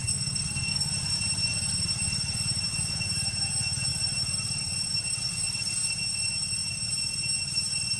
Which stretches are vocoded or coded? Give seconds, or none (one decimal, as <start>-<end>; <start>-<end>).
0.0-0.9